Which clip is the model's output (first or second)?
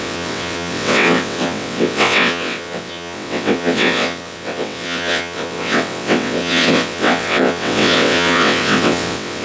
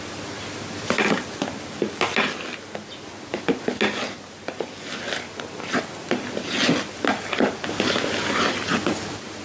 first